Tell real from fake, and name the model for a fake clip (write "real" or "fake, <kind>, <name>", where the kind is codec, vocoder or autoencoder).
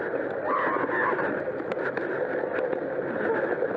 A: real